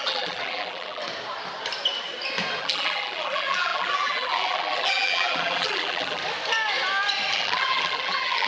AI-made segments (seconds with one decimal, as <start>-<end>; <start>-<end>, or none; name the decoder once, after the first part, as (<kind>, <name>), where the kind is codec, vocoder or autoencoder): 0.0-1.0 (vocoder, BigVGAN v2); 2.6-6.2; 7.3-8.5

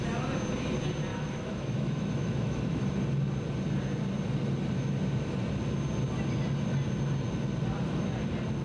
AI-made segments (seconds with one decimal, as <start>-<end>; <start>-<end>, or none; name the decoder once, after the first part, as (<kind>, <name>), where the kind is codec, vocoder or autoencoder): 1.1-2.9 (autoencoder, DAC-VAE)

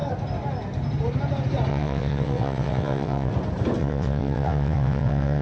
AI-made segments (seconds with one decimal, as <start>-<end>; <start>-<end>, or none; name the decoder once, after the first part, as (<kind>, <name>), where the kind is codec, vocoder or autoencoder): 1.7-3.3 (vocoder, WaveNeXt); 3.8-5.4

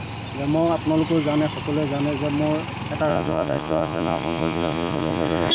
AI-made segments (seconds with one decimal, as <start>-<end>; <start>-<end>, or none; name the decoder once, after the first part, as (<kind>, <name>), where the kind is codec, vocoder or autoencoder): 3.1-5.5 (vocoder, Vocos)

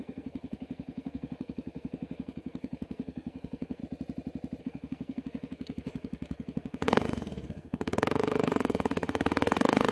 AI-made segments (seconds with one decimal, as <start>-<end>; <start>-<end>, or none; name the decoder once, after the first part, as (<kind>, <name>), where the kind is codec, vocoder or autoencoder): 0.0-3.8 (codec, SNAC); 4.6-9.9

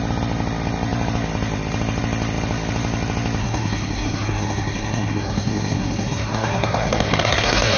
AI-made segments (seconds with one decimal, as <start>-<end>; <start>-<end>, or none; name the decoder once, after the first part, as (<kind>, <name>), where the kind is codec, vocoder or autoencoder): 3.4-7.8 (codec, SNAC)

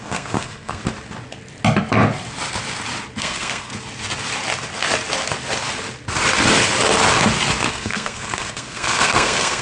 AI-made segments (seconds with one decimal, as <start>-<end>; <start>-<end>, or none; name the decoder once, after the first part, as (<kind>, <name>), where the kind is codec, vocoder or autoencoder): 0.0-0.8 (codec, SNAC); 3.2-3.7; 7.7-9.6